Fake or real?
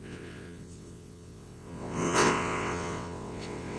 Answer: fake